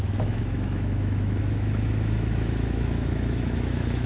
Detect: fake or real fake